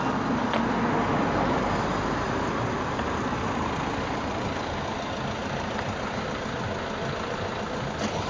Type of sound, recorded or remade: recorded